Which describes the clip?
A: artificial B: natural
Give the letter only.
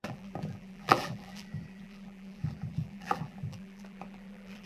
A